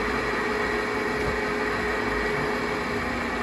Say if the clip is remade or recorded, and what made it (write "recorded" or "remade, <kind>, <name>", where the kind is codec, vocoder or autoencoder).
recorded